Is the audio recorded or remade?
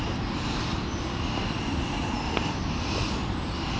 recorded